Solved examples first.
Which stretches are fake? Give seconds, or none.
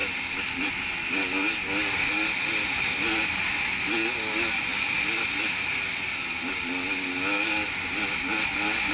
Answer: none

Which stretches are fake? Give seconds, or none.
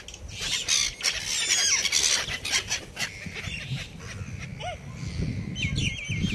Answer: none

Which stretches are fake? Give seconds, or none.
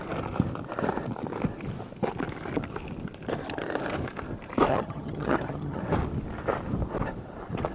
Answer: 4.7-5.8 (vocoder, HiFi-GAN)